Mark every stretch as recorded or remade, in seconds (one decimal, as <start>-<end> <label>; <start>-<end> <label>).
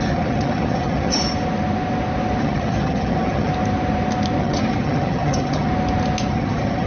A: 0.0-1.1 remade; 1.1-2.4 recorded; 2.4-3.5 remade; 3.5-4.4 recorded; 4.4-5.7 remade; 5.7-6.3 recorded; 6.3-6.9 remade